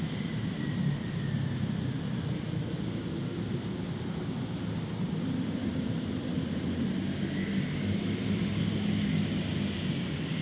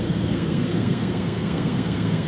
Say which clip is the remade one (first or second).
second